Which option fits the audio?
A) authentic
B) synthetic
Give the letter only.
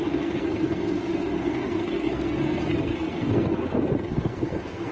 B